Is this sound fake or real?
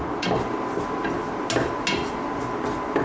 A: real